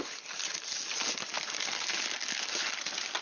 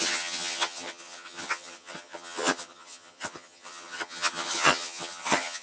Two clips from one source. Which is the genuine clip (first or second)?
first